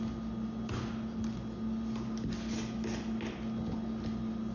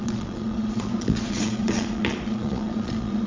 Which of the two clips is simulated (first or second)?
second